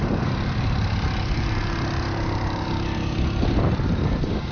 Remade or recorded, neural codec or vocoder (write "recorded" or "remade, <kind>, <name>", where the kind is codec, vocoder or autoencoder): remade, vocoder, BigVGAN v2